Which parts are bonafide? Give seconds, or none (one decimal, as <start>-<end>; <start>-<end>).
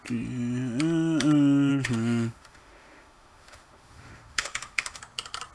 0.0-1.7; 5.0-5.5